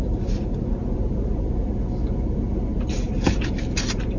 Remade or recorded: recorded